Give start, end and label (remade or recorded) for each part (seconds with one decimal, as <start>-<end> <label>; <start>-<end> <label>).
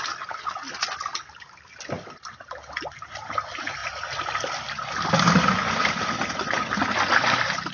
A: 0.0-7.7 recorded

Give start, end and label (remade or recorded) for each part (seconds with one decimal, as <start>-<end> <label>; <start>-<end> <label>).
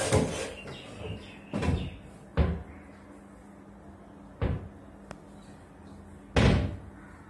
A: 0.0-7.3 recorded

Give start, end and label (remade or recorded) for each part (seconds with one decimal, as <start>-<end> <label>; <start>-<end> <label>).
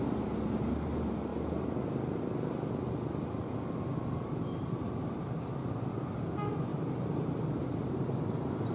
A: 0.0-1.3 remade; 1.3-4.2 recorded; 4.2-8.7 remade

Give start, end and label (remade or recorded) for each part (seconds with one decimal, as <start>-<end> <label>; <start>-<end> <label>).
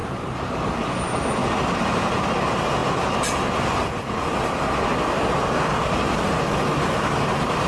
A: 0.0-0.8 remade; 0.8-1.4 recorded; 1.4-2.3 remade; 2.3-7.7 recorded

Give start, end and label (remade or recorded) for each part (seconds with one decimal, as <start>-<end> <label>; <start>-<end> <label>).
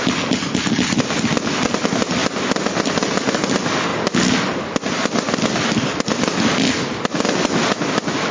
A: 0.0-8.3 recorded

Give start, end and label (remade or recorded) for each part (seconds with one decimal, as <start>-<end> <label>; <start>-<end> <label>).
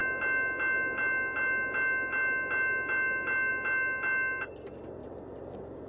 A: 0.0-5.9 recorded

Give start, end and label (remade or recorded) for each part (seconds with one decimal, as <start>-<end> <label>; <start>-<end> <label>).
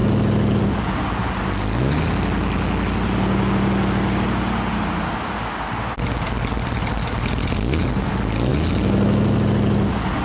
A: 0.0-10.2 recorded